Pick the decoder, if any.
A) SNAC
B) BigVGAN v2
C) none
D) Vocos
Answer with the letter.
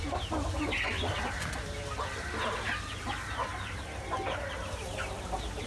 C